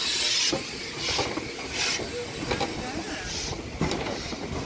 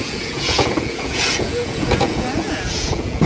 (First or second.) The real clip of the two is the first